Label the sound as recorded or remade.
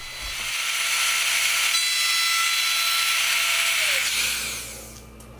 recorded